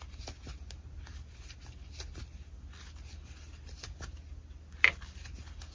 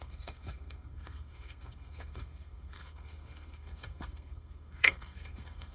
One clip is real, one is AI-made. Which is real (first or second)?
first